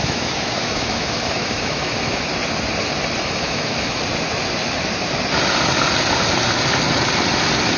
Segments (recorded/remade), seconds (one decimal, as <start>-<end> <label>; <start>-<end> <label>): 0.0-2.3 remade; 2.3-3.2 recorded; 3.2-4.0 remade; 4.0-7.8 recorded

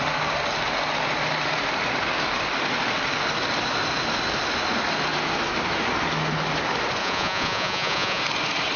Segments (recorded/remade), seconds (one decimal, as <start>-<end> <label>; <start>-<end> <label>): 0.0-7.0 recorded; 7.0-8.2 remade; 8.2-8.8 recorded

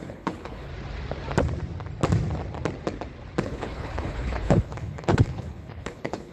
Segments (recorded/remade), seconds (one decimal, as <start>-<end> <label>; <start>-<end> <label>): 0.0-0.7 remade; 0.7-3.4 recorded; 3.4-6.3 remade

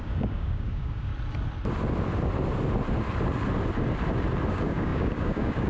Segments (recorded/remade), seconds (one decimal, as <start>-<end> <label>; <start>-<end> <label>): 0.0-1.1 remade; 1.1-4.5 recorded; 4.5-5.7 remade

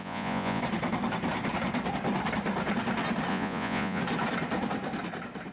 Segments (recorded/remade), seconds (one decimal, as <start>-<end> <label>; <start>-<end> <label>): 0.0-0.6 remade; 0.6-3.3 recorded; 3.3-4.0 remade; 4.0-5.5 recorded

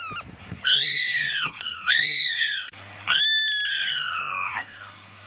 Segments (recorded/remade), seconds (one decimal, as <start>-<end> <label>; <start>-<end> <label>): 0.0-0.4 recorded; 0.4-3.2 remade; 3.2-3.7 recorded; 3.7-5.3 remade

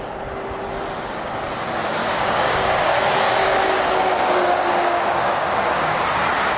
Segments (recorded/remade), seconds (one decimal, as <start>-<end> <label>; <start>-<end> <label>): 0.0-2.0 recorded; 2.0-6.0 remade; 6.0-6.6 recorded